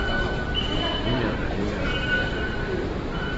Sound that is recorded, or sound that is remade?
remade